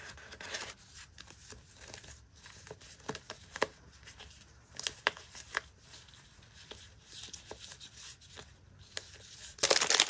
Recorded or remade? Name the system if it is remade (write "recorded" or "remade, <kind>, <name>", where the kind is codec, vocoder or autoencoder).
recorded